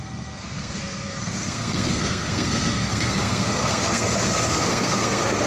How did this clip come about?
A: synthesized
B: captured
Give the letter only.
A